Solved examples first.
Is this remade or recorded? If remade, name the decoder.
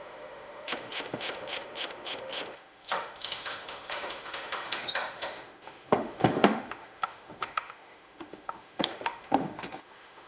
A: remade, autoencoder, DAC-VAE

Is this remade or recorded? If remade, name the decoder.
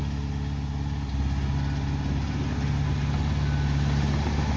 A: recorded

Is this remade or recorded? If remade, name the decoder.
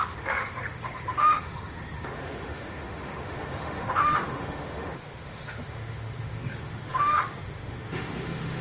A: remade, autoencoder, DAC-VAE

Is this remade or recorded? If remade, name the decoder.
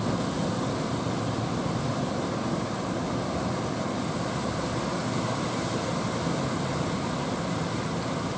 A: recorded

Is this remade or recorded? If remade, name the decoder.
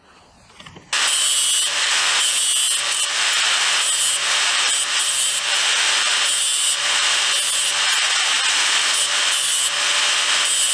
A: recorded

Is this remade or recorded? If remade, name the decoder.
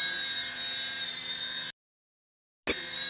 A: recorded